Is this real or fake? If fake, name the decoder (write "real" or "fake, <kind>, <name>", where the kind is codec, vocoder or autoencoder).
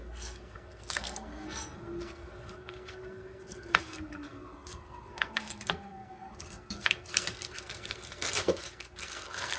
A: fake, codec, SNAC